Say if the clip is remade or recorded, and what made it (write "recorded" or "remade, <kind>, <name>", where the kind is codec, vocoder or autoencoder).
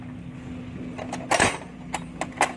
recorded